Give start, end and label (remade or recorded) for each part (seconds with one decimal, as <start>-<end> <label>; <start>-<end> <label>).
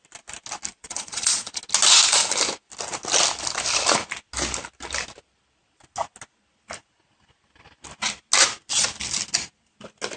0.0-0.7 recorded; 0.7-1.6 remade; 1.6-10.2 recorded